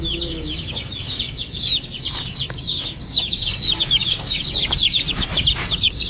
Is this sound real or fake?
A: fake